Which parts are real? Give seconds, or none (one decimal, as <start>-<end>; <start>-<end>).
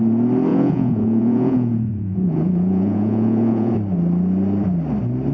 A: 0.0-0.5; 3.7-5.3